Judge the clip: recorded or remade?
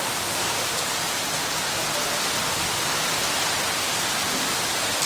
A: recorded